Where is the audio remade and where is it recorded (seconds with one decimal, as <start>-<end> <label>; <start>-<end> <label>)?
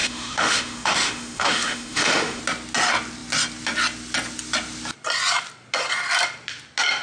0.0-2.4 remade; 2.4-7.0 recorded